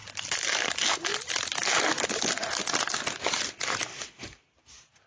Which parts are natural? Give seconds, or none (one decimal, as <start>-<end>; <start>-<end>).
0.7-1.1; 3.6-5.1